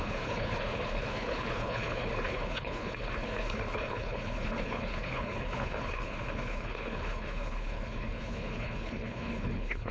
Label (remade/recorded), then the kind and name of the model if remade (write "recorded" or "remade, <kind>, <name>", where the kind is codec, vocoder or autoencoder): remade, codec, HILCodec